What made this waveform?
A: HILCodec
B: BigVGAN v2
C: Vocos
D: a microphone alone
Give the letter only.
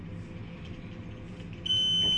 D